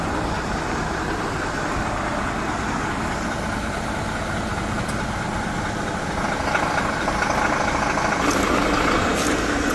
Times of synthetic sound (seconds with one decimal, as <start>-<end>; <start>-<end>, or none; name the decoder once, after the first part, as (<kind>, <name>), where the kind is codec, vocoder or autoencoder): none